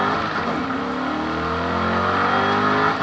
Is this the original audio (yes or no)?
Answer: yes